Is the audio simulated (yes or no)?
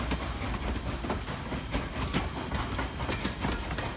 no